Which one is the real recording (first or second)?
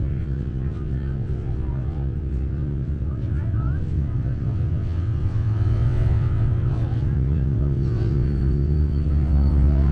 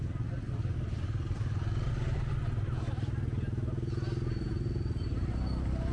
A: second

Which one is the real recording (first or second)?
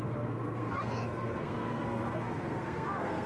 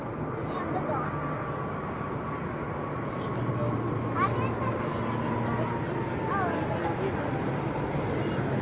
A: second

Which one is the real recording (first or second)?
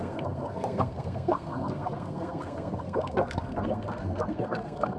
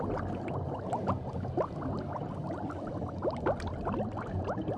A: second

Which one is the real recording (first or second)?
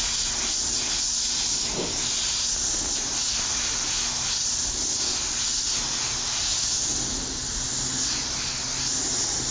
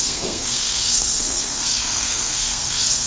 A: first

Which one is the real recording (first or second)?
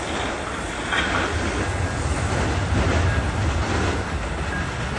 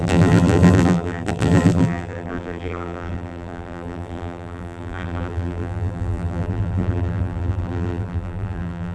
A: first